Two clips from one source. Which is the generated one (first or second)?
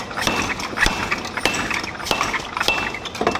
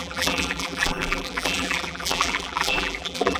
second